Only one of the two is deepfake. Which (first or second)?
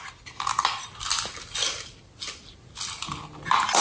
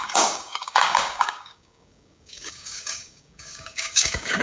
second